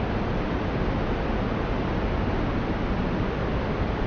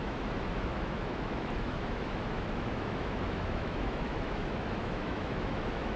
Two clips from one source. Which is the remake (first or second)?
second